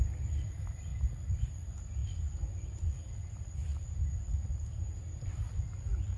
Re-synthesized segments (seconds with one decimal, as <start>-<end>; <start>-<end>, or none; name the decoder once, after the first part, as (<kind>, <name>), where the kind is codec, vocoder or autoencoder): none